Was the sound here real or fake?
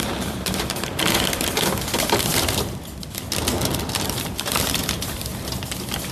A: fake